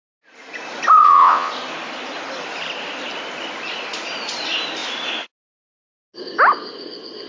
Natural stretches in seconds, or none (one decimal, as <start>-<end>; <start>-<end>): 0.0-1.0; 1.5-7.3